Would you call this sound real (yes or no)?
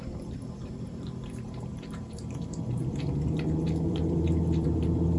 no